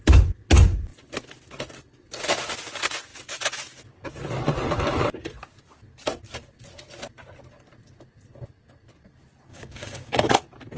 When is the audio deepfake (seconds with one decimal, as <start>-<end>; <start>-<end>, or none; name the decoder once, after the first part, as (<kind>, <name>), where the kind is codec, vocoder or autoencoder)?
9.5-10.3 (codec, DAC)